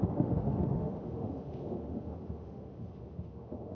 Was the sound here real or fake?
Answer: fake